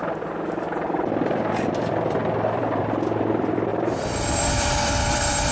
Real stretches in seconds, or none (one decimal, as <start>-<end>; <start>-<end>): none